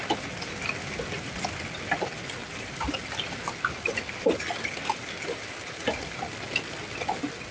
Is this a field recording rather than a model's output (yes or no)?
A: yes